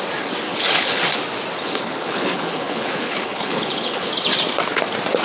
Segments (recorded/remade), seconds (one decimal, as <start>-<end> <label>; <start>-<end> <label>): 0.0-0.5 recorded; 0.5-1.0 remade; 1.0-1.6 recorded; 1.6-4.1 remade; 4.1-5.2 recorded